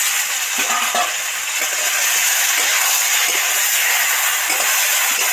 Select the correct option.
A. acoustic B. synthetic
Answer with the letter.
A